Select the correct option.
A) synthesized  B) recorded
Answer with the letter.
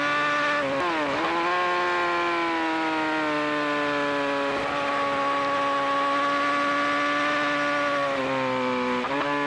B